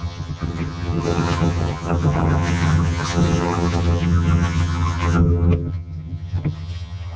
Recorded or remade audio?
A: remade